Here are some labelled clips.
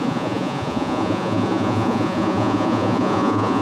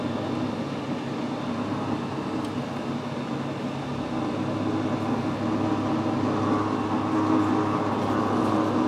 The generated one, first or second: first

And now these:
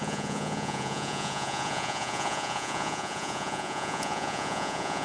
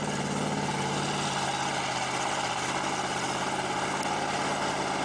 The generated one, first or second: first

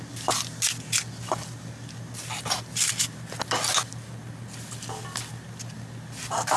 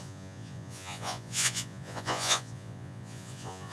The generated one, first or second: second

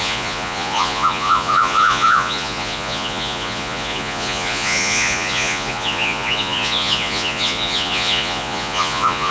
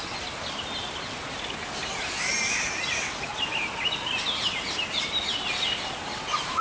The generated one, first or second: first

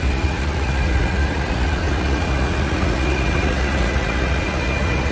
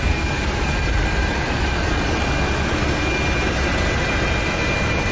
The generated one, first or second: first